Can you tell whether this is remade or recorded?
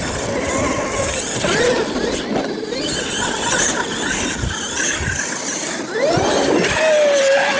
recorded